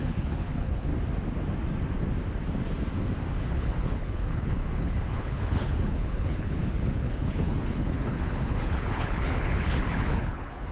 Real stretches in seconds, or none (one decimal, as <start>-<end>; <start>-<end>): 0.9-3.4